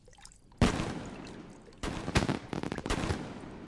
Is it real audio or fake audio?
real